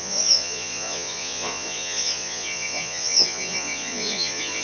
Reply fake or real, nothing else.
fake